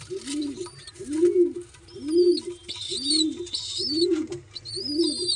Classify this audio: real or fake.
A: real